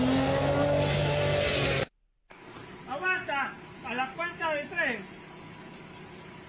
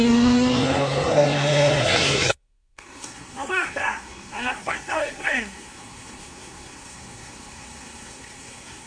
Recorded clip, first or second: first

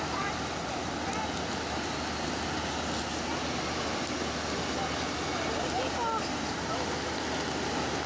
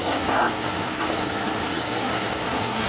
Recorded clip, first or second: first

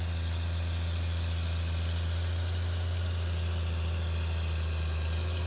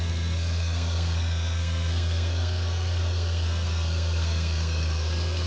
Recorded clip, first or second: first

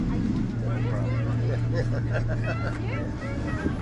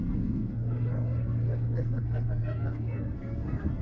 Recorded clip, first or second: first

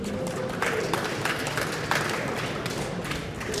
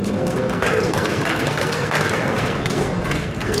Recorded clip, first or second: first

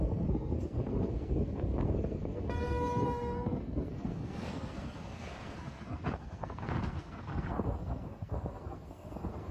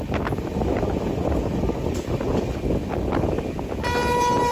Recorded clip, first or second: second